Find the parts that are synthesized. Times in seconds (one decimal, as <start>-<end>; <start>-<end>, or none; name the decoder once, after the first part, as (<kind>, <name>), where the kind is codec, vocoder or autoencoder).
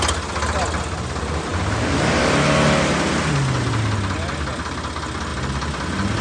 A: none